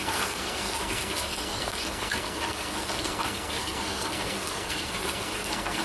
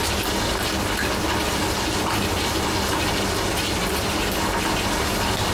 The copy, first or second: first